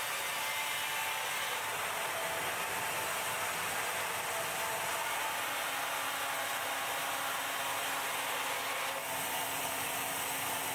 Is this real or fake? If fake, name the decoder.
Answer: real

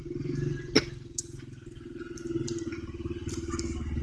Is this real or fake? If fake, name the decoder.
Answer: real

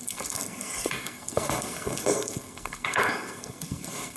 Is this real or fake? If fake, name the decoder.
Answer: fake, codec, SNAC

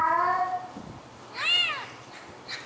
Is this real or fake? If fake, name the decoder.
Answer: real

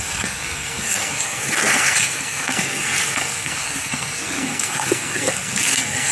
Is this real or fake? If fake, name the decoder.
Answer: fake, codec, SNAC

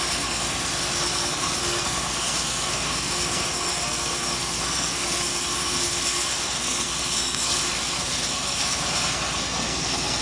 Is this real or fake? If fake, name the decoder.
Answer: fake, codec, SNAC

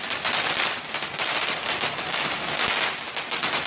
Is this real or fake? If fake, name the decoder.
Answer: real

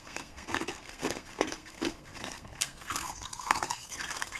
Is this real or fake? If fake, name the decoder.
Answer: fake, codec, SNAC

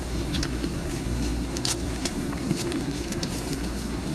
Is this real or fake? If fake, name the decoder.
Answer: fake, codec, SNAC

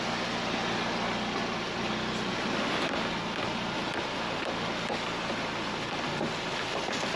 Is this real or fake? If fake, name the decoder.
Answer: real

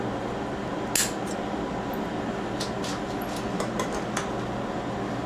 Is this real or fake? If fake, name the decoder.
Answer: real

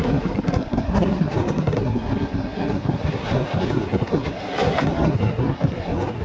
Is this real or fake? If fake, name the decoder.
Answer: fake, codec, SNAC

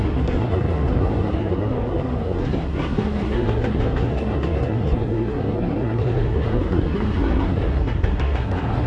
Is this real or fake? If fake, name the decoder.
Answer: fake, codec, SNAC